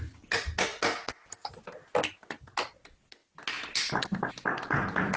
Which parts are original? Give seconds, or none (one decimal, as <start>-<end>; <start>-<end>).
0.0-5.2